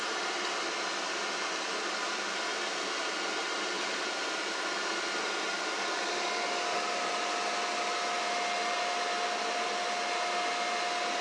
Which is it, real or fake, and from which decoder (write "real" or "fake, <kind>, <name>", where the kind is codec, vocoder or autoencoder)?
real